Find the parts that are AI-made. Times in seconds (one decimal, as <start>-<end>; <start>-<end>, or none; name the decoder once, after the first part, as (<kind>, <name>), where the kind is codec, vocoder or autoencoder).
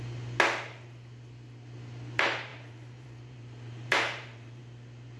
2.5-4.6 (vocoder, BigVGAN v2)